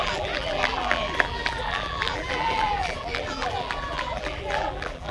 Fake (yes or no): yes